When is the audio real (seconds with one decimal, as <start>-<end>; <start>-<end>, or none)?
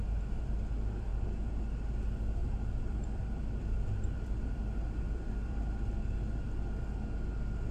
0.0-1.1; 1.6-2.4; 5.6-7.7